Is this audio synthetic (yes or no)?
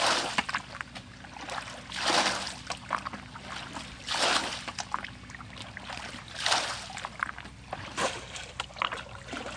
no